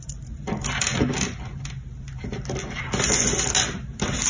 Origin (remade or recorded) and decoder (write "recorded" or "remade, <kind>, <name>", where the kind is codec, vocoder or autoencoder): recorded